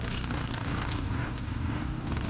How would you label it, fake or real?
fake